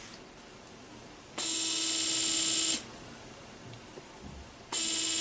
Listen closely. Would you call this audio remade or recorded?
recorded